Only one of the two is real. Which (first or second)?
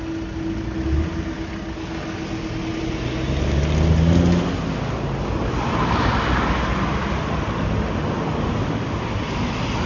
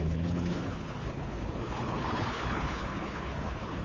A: first